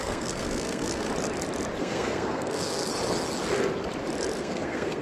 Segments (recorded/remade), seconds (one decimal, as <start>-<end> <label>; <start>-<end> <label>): 0.0-1.1 remade; 1.1-1.8 recorded; 1.8-2.9 remade; 2.9-4.4 recorded; 4.4-5.0 remade